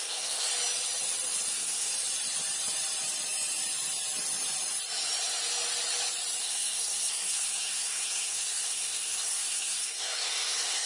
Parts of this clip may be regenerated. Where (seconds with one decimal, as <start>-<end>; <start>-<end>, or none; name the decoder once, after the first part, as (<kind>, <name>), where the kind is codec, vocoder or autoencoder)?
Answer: 0.0-0.5 (codec, SNAC); 1.5-1.9; 6.4-10.9